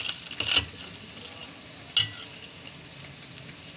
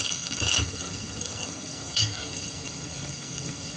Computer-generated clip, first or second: second